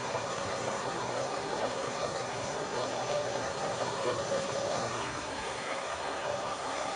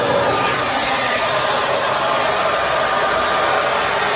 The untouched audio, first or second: second